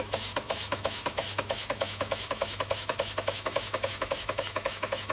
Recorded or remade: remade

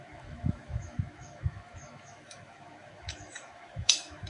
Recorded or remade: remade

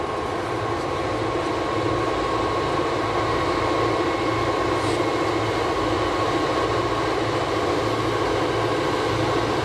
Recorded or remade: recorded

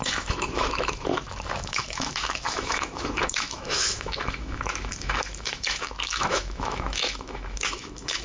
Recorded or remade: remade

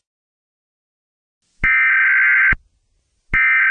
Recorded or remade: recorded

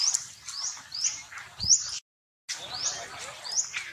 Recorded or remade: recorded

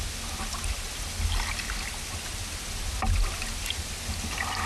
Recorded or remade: recorded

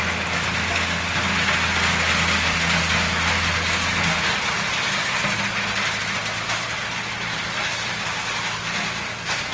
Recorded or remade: recorded